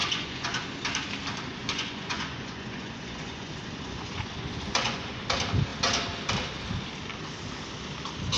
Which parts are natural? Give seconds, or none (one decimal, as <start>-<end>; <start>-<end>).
0.7-1.6; 5.2-8.4